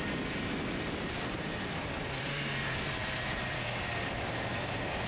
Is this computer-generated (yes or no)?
yes